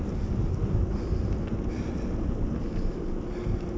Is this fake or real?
real